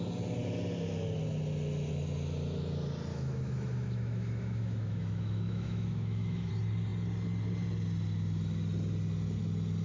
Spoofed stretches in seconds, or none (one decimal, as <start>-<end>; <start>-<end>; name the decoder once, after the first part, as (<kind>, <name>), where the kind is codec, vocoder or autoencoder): 3.1-6.5 (autoencoder, DAC-VAE)